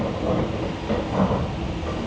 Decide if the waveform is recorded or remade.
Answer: recorded